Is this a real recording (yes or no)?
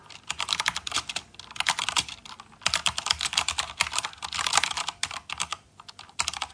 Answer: yes